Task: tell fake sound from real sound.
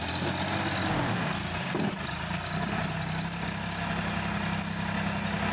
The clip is real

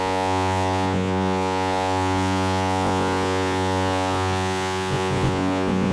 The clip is fake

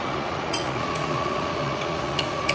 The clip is fake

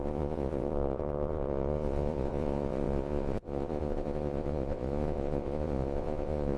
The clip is fake